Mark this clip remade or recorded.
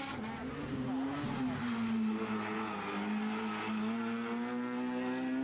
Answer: recorded